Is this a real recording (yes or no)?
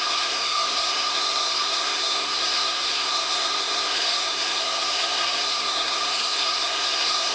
no